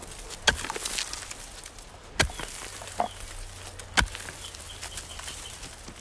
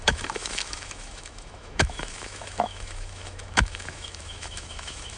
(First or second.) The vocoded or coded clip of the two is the second